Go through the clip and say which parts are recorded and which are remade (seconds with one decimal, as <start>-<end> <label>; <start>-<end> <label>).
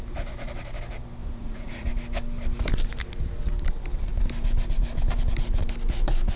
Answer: 0.0-1.2 recorded; 1.2-1.9 remade; 1.9-6.4 recorded